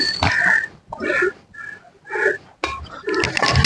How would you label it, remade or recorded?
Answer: recorded